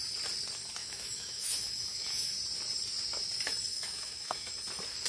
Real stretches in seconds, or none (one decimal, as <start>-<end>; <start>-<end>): 0.0-0.8; 2.3-3.7; 4.5-5.1